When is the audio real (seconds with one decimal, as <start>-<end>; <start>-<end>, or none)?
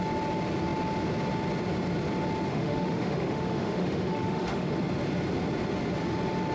0.0-2.5; 4.7-6.5